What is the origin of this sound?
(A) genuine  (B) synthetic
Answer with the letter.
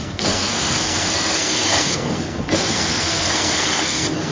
B